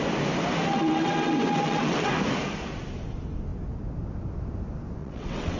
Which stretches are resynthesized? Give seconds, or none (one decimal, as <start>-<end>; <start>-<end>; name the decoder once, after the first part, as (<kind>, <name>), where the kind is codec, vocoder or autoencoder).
0.7-2.1 (vocoder, WaveNeXt); 5.0-5.6